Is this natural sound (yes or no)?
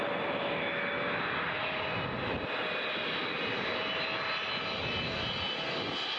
yes